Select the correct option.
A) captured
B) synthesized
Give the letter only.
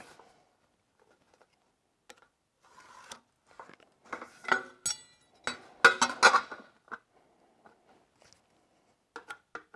A